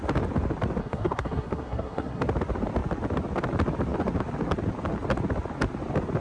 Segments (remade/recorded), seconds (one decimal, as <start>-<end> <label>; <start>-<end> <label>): 0.0-0.8 recorded; 0.8-2.2 remade; 2.2-6.2 recorded